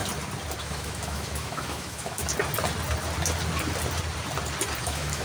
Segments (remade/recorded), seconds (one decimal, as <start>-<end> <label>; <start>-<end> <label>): 0.0-0.6 recorded; 0.6-2.2 remade; 2.2-4.8 recorded; 4.8-5.2 remade